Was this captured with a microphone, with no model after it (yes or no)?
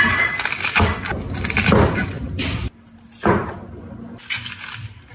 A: yes